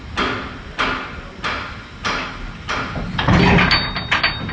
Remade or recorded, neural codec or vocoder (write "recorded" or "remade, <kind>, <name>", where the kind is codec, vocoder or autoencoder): recorded